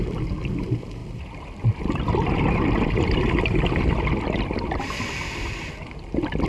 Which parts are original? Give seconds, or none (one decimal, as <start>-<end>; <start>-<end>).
0.0-1.0; 1.8-6.5

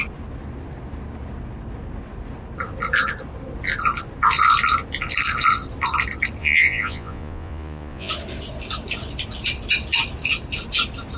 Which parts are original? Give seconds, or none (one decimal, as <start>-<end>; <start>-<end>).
0.0-6.4; 8.1-11.2